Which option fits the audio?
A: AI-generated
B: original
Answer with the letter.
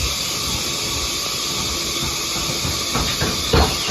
B